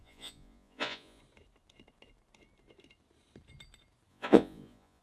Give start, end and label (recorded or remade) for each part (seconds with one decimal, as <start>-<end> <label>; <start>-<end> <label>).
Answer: 0.0-1.2 remade; 1.2-4.1 recorded; 4.1-5.0 remade